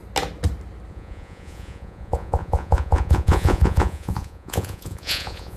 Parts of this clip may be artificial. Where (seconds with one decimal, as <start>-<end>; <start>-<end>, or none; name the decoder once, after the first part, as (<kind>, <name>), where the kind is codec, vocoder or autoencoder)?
0.9-5.6 (vocoder, Vocos)